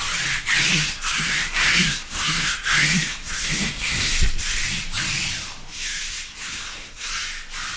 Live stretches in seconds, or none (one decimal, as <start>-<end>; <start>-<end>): 0.0-0.7; 4.6-5.7; 7.1-7.8